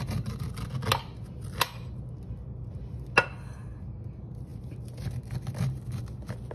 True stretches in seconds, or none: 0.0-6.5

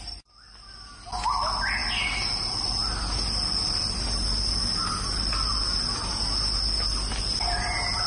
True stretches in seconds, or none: 0.0-8.1

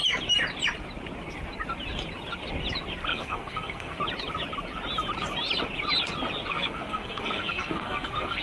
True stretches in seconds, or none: 0.0-3.1; 4.0-6.5

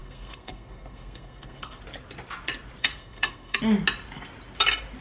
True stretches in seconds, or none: 1.8-2.8; 3.6-5.0

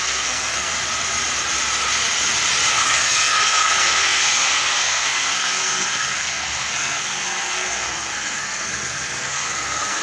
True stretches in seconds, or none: 0.7-2.7

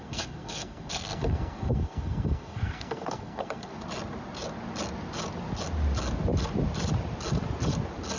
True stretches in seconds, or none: 3.7-8.2

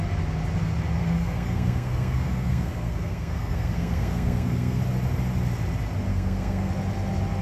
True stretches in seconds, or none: 0.0-1.0; 4.8-6.1; 6.7-7.4

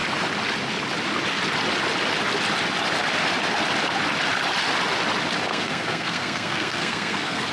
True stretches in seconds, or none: 0.0-5.5